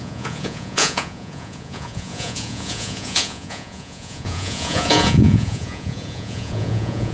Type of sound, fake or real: fake